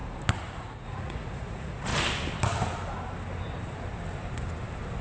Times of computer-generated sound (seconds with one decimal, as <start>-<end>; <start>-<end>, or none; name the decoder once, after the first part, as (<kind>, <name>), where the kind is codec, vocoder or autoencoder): 0.6-1.9 (vocoder, Vocos)